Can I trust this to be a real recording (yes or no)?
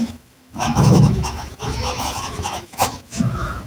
no